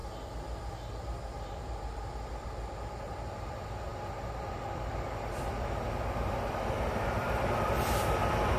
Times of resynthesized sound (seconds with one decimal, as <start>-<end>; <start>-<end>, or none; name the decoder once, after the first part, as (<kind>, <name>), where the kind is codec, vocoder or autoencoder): 1.0-3.9 (vocoder, BigVGAN v2); 4.5-8.6